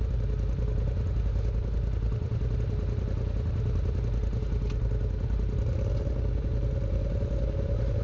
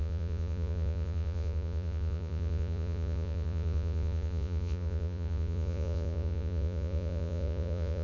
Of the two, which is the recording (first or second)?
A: first